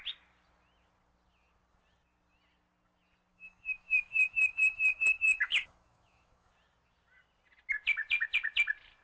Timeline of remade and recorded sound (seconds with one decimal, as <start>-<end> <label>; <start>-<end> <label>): 0.0-3.3 recorded; 3.3-6.5 remade; 6.5-9.0 recorded